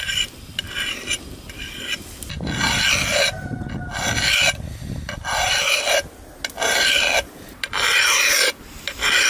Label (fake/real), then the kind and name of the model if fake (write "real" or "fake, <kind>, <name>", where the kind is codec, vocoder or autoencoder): real